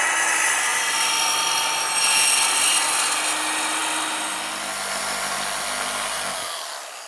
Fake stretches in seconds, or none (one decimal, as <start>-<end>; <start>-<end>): none

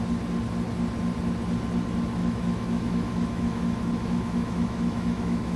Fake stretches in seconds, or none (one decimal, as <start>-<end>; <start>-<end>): 2.2-5.6

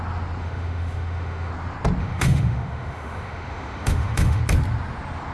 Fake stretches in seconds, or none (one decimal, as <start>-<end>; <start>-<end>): 0.4-1.5; 2.0-4.4

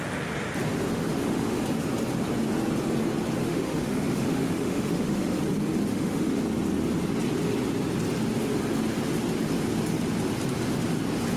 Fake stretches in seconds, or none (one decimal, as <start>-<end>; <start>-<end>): 0.9-1.6; 3.4-5.4; 5.9-6.4